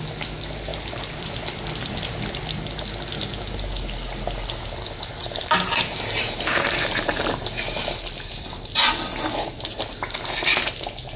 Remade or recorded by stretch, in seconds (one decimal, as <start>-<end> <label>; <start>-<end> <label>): 0.0-0.7 recorded; 0.7-1.3 remade; 1.3-5.2 recorded; 5.2-8.1 remade; 8.1-11.2 recorded